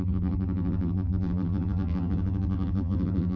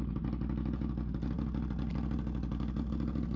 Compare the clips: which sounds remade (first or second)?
first